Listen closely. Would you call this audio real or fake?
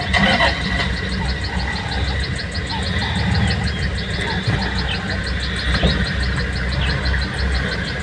real